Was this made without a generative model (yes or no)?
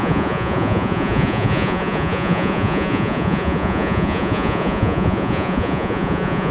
no